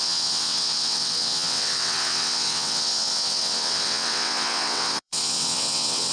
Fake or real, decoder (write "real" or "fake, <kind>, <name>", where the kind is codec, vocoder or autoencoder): fake, vocoder, WaveNeXt